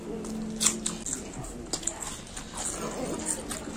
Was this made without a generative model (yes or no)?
yes